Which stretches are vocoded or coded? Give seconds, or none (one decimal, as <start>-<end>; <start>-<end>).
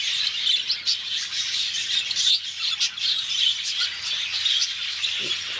none